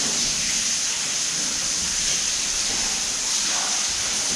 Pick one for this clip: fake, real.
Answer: real